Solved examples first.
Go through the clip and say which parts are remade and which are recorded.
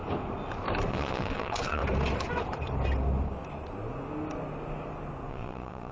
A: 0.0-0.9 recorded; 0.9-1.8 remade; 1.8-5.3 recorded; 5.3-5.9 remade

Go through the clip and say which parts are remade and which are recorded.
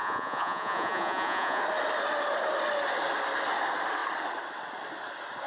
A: 0.0-1.6 remade; 1.6-5.5 recorded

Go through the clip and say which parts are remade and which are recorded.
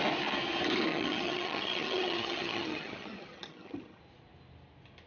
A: 0.0-0.9 recorded; 0.9-4.0 remade; 4.0-5.1 recorded